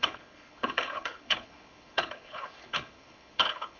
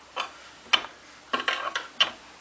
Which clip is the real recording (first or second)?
second